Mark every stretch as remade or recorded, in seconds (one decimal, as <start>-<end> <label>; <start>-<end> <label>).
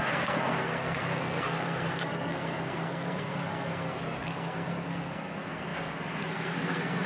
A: 0.0-7.1 remade